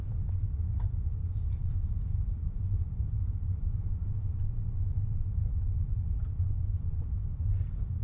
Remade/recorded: remade